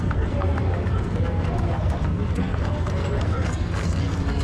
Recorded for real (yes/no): no